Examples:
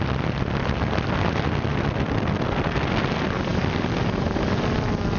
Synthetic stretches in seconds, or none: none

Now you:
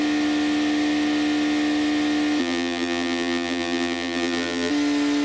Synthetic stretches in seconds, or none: 2.4-4.7 (vocoder, BigVGAN v2)

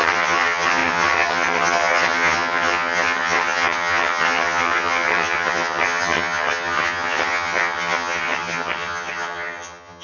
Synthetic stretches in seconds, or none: 0.0-10.0 (vocoder, HiFi-GAN)

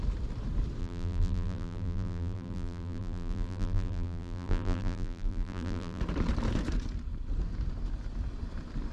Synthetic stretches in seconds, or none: 0.8-6.0 (vocoder, BigVGAN v2)

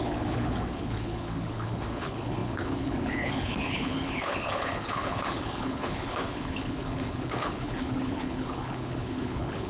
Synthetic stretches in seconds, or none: 0.0-9.7 (codec, HILCodec)

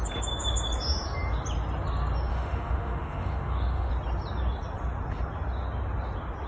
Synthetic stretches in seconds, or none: 2.3-3.9 (autoencoder, DAC-VAE)

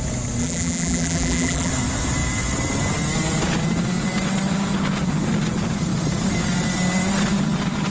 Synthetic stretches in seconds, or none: 0.4-1.7 (vocoder, BigVGAN v2)